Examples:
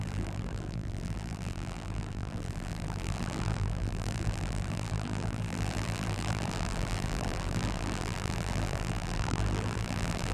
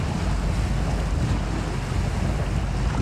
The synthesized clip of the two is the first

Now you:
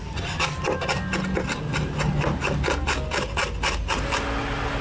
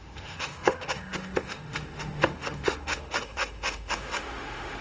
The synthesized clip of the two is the second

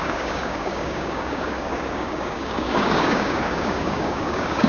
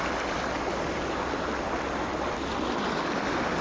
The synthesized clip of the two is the first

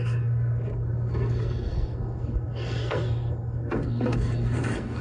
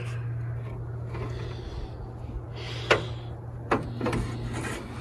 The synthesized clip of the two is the first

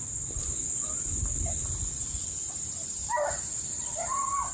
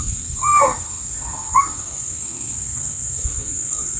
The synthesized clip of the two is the second